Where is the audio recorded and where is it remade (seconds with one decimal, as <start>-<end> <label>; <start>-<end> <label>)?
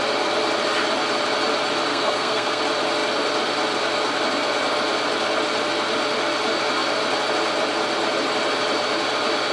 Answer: 0.0-1.9 recorded; 1.9-2.6 remade; 2.6-9.5 recorded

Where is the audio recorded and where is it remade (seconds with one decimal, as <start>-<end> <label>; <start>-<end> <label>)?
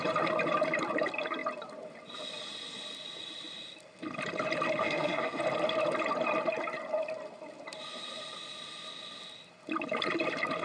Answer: 0.0-4.8 recorded; 4.8-5.4 remade; 5.4-10.6 recorded